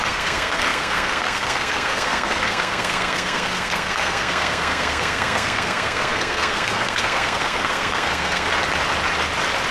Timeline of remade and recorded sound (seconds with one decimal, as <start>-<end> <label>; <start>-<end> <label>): 0.0-8.5 remade; 8.5-9.7 recorded